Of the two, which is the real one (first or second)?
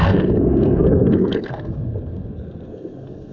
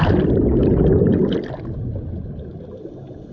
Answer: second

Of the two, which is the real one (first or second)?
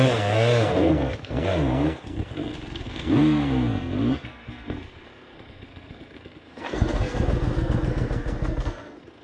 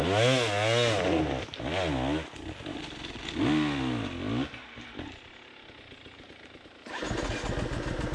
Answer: second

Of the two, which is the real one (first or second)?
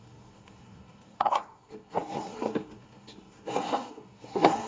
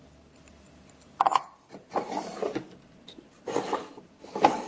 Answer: second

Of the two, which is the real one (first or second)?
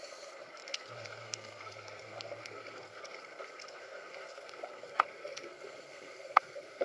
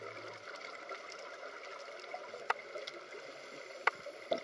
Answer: second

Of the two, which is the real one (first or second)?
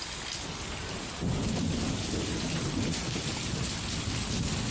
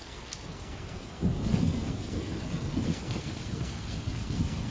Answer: first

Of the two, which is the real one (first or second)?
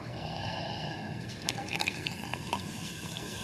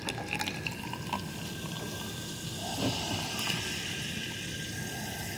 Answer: second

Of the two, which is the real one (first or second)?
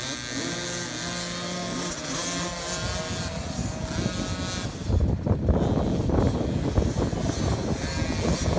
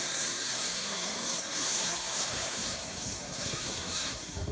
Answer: first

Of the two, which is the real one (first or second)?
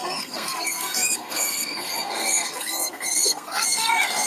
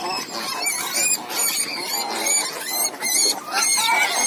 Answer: second